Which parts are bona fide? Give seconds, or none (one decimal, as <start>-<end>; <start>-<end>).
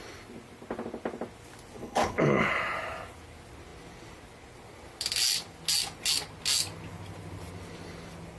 0.0-1.8; 2.5-8.4